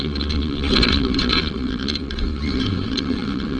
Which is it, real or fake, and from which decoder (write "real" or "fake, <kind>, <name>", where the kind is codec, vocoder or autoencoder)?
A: fake, vocoder, WaveNeXt